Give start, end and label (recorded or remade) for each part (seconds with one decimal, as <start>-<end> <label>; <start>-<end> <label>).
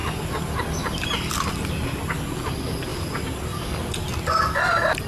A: 0.0-5.1 recorded